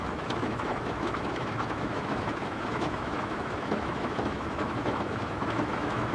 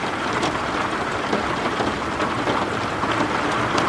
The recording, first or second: second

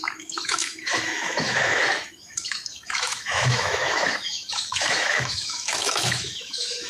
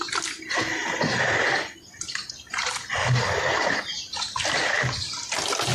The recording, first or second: second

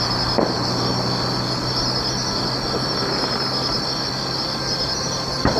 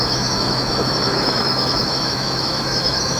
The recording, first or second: first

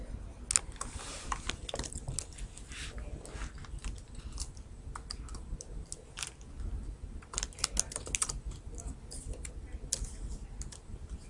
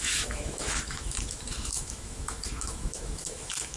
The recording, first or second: first